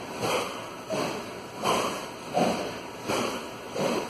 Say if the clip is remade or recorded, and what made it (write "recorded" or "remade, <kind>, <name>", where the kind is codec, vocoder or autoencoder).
remade, vocoder, BigVGAN v2